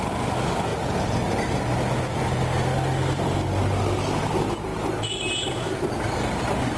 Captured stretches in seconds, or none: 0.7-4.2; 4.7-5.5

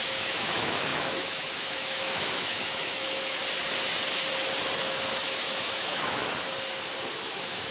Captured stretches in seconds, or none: 3.4-4.8; 6.2-7.1

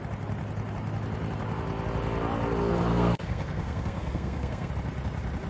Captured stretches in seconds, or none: 0.0-2.9; 4.7-5.5

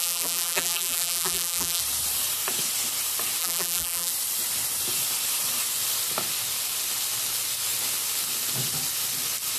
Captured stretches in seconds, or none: 1.8-3.4; 4.1-9.6

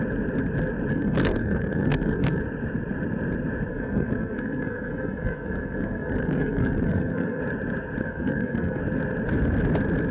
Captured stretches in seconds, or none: 0.0-0.9; 2.4-3.7; 7.4-8.0; 8.8-10.1

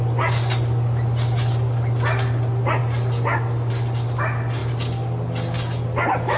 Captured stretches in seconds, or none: 0.0-6.4

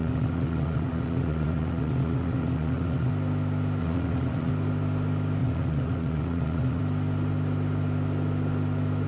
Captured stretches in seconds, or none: 3.1-3.8; 4.5-5.4; 6.8-9.1

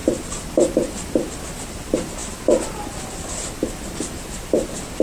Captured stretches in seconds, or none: 0.0-5.0